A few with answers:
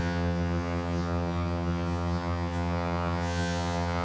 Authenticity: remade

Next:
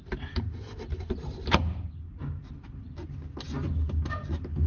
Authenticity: recorded